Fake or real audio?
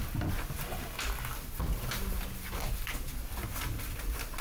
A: real